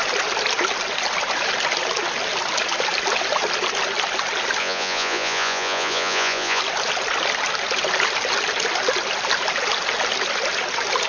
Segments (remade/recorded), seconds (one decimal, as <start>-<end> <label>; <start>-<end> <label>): 0.0-4.6 recorded; 4.6-6.6 remade; 6.6-11.1 recorded